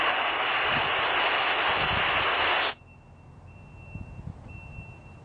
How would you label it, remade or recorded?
recorded